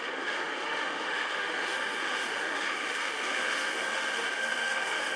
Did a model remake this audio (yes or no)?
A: yes